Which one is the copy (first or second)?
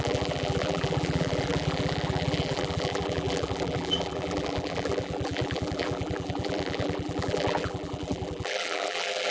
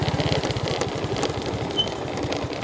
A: first